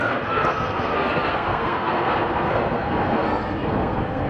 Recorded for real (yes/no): no